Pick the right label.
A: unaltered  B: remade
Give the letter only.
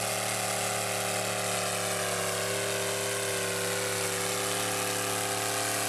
A